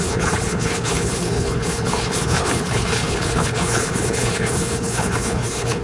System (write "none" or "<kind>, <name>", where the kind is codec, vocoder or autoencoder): codec, HILCodec